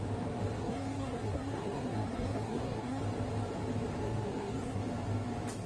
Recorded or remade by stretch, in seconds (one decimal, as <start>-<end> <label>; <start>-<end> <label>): 0.0-0.6 recorded; 0.6-3.0 remade; 3.0-4.0 recorded; 4.0-4.8 remade; 4.8-5.7 recorded